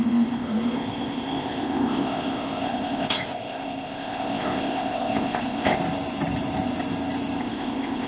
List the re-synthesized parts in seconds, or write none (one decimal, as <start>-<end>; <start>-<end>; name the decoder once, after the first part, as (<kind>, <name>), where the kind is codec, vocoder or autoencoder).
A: 0.0-5.8 (codec, ZipCodec); 7.4-8.1